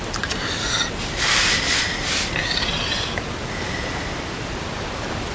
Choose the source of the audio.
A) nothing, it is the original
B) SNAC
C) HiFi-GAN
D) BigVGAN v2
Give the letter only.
A